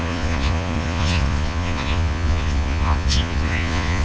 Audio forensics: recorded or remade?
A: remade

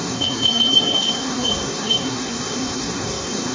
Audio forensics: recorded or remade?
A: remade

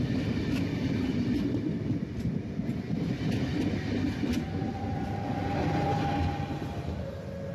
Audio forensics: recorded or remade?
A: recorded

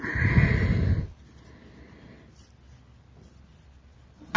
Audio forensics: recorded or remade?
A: recorded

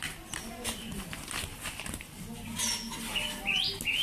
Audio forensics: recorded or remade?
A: recorded